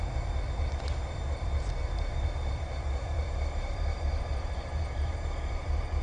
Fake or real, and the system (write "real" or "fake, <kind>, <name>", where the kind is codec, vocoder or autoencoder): fake, vocoder, BigVGAN v2